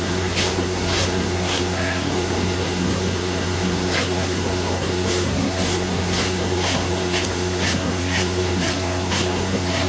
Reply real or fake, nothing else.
fake